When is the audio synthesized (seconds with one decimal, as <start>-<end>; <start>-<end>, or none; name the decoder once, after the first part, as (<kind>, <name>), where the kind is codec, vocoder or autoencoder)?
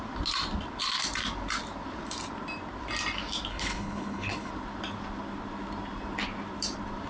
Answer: 3.5-4.5 (codec, HILCodec)